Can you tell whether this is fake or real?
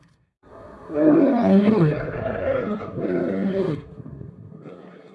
fake